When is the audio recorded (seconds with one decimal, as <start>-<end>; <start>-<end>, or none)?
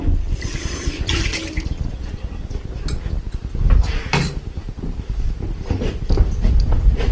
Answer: 1.3-3.3; 4.6-7.1